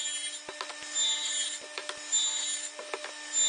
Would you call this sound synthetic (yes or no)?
no